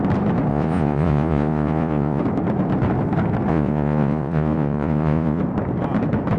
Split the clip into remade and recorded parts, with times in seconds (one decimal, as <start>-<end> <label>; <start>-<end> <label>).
0.0-0.5 recorded; 0.5-2.2 remade; 2.2-3.5 recorded; 3.5-5.4 remade; 5.4-6.4 recorded